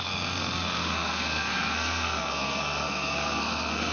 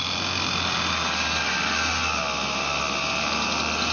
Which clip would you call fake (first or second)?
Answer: first